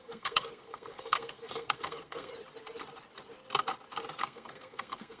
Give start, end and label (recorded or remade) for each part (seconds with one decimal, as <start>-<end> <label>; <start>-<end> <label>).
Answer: 0.0-2.3 remade; 2.3-4.2 recorded; 4.2-5.2 remade